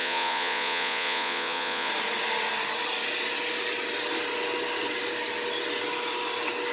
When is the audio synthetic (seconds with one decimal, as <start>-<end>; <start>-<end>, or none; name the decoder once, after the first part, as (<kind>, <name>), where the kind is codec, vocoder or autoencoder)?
0.0-1.9 (vocoder, Vocos)